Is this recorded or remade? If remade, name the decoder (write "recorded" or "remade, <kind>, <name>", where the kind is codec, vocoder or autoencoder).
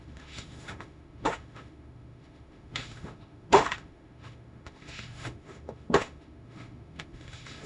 remade, autoencoder, DAC-VAE